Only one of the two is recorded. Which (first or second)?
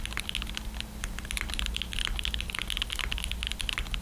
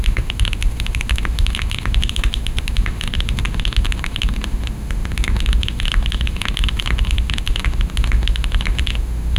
first